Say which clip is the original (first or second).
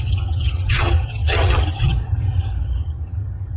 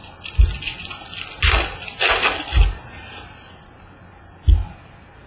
second